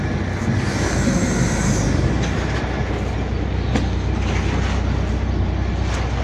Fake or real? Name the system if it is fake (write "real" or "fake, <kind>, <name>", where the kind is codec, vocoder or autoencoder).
real